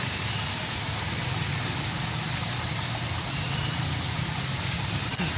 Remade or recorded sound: recorded